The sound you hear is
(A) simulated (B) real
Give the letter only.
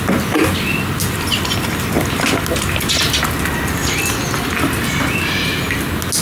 B